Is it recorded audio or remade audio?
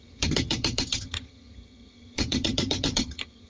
remade